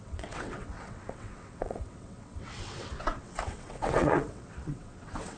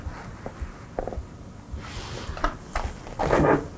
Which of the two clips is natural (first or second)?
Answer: second